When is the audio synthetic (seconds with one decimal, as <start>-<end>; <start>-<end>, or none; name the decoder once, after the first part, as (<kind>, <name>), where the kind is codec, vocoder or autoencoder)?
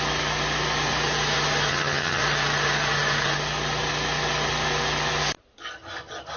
1.7-2.2 (vocoder, HiFi-GAN)